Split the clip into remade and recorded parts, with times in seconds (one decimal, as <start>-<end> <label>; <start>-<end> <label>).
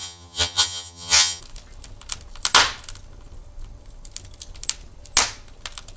0.0-1.4 remade; 1.4-6.0 recorded